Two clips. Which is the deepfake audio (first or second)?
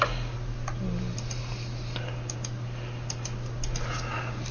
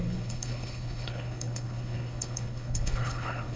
second